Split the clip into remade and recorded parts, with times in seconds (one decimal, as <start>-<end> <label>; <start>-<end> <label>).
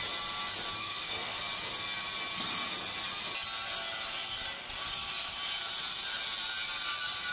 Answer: 0.0-0.8 recorded; 0.8-1.4 remade; 1.4-7.3 recorded